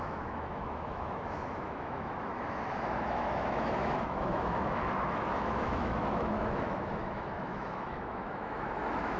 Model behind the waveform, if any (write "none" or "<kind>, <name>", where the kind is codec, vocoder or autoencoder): autoencoder, DAC-VAE